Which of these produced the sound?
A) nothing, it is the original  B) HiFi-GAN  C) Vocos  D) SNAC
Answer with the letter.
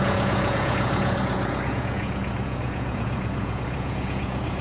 C